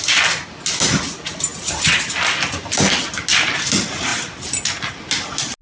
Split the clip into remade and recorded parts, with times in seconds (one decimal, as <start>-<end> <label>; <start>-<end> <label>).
0.0-1.5 recorded; 1.5-2.1 remade; 2.1-5.6 recorded